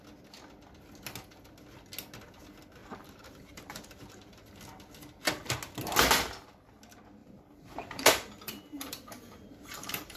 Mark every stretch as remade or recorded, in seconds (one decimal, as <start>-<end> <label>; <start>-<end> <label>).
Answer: 0.0-2.8 recorded; 2.8-4.5 remade; 4.5-7.2 recorded; 7.2-10.2 remade